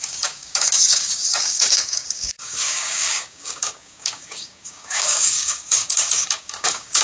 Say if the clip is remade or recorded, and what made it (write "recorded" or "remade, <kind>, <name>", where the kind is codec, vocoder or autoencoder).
remade, codec, DAC